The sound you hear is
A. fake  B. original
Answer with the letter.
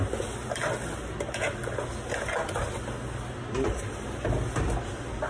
B